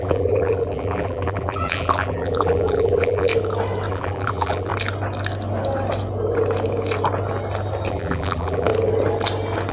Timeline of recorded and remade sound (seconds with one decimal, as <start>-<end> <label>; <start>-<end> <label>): 0.0-3.3 remade; 3.3-3.9 recorded; 3.9-4.7 remade; 4.7-7.9 recorded; 7.9-8.7 remade; 8.7-9.7 recorded